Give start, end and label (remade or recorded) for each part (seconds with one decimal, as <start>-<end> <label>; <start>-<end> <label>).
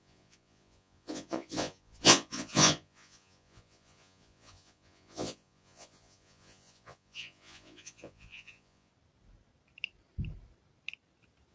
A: 0.0-8.9 remade; 8.9-11.5 recorded